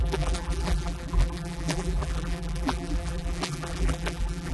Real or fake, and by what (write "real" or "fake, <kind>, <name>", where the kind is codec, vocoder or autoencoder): fake, vocoder, BigVGAN v2